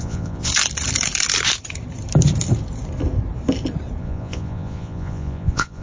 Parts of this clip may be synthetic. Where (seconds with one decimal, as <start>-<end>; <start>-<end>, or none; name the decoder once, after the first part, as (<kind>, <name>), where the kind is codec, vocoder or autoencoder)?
0.0-0.5 (vocoder, Vocos); 4.0-5.8